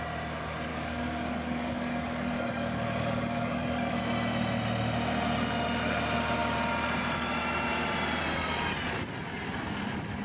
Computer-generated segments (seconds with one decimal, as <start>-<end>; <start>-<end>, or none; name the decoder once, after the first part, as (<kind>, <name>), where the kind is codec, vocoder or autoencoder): 0.7-4.0 (codec, DAC)